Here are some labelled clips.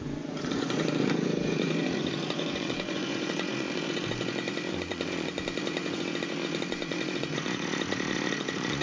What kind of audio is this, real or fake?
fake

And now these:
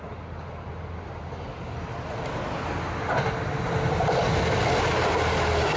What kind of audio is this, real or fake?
real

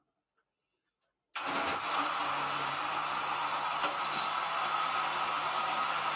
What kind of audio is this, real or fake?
real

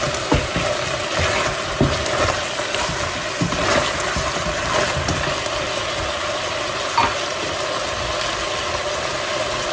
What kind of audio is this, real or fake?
real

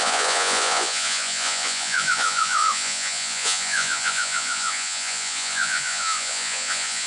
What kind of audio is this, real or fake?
fake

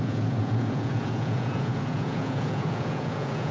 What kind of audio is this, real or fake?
fake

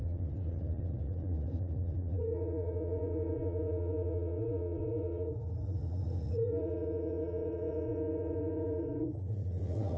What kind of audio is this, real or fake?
fake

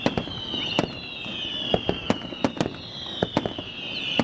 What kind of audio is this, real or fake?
real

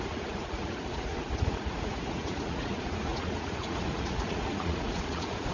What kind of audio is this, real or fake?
fake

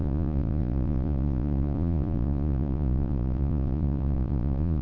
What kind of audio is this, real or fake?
fake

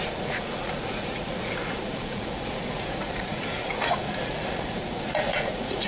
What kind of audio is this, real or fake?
fake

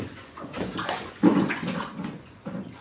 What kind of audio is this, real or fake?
fake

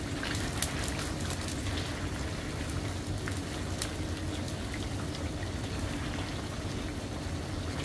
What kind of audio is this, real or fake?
real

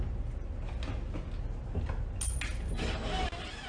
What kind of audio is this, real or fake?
real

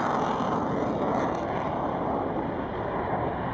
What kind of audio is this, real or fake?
real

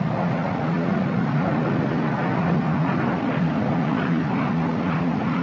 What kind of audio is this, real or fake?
fake